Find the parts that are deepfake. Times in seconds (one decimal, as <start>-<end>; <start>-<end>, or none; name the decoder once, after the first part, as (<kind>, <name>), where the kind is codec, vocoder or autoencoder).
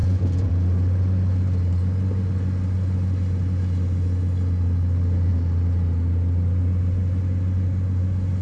0.0-0.5 (vocoder, Vocos)